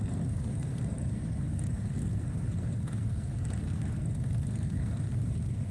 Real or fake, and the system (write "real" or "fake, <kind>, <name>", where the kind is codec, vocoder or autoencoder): fake, codec, SNAC